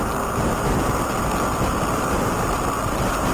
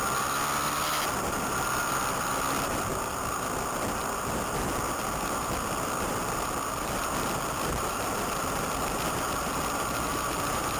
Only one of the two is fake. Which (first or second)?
second